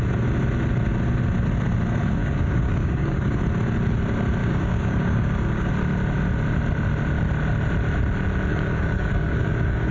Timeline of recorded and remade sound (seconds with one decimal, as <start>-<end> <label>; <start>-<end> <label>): 0.0-2.2 recorded; 2.2-3.4 remade; 3.4-4.4 recorded; 4.4-5.7 remade; 5.7-8.5 recorded; 8.5-9.9 remade